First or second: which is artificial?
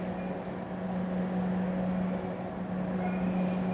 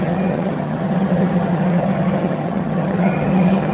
second